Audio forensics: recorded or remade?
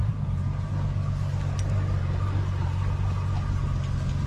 recorded